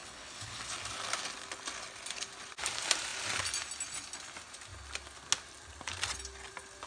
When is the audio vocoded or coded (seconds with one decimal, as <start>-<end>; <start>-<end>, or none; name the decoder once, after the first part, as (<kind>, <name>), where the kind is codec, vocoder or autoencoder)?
0.0-0.6 (codec, HILCodec)